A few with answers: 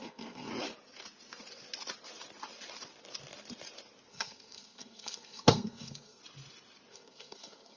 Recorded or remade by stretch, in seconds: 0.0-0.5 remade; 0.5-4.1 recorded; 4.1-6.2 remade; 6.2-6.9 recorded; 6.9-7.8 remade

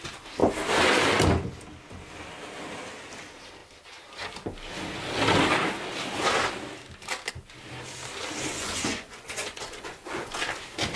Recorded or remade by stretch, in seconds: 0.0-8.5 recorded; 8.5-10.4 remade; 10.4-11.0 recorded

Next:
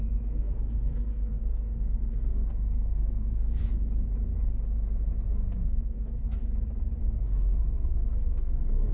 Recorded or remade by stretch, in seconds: 0.0-3.6 remade; 3.6-5.6 recorded; 5.6-6.4 remade; 6.4-7.0 recorded; 7.0-8.9 remade

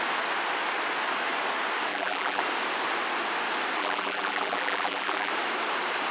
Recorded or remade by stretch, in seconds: 0.0-1.9 recorded; 1.9-2.4 remade; 2.4-3.8 recorded; 3.8-5.3 remade; 5.3-6.1 recorded

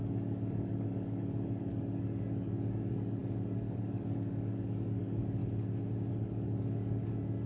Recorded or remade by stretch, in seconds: 0.0-5.4 remade; 5.4-6.1 recorded; 6.1-7.5 remade

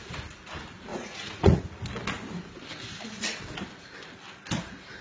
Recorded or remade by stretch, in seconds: 0.0-0.9 recorded; 0.9-1.6 remade; 1.6-5.0 recorded